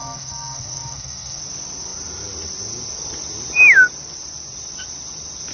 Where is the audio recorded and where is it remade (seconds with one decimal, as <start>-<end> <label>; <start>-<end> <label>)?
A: 0.0-1.4 remade; 1.4-5.5 recorded